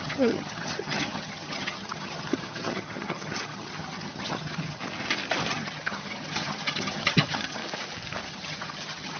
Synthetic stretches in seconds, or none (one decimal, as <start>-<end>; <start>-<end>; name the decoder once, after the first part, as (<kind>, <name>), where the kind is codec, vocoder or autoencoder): 0.0-4.8 (vocoder, HiFi-GAN); 5.5-7.6; 8.3-9.2